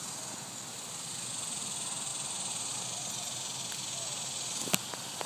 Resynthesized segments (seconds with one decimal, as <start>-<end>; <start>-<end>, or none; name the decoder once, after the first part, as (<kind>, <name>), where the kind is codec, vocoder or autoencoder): 2.1-3.6 (vocoder, BigVGAN v2)